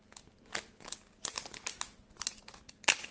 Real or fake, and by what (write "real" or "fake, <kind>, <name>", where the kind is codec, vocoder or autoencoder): real